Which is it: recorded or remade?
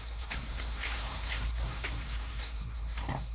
remade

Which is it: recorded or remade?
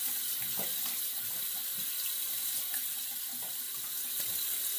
recorded